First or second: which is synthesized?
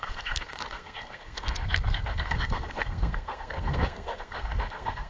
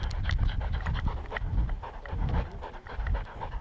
first